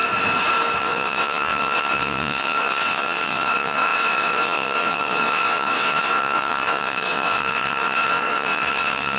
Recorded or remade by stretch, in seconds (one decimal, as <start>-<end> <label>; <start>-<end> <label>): 0.0-0.8 recorded; 0.8-9.2 remade